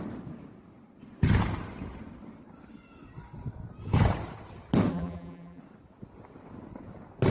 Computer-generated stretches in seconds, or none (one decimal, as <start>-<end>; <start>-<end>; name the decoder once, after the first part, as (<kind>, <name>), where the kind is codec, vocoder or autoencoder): 4.9-5.6 (vocoder, BigVGAN v2)

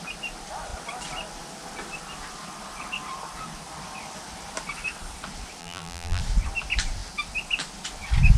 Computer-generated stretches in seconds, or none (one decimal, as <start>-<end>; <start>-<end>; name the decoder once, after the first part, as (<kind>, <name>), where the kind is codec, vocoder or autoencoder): 5.6-6.2 (vocoder, BigVGAN v2)

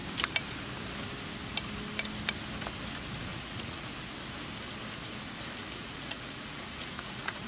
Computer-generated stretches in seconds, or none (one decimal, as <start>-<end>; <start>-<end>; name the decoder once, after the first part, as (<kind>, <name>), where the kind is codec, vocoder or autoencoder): 3.3-3.9 (vocoder, Vocos); 5.6-7.5

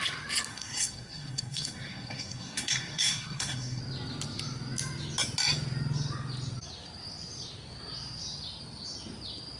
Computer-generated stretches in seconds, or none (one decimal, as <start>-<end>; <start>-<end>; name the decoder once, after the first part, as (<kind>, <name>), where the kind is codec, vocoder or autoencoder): 0.5-3.8 (codec, SNAC)